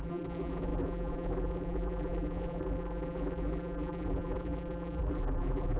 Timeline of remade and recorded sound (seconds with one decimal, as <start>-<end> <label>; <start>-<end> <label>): 0.0-5.8 remade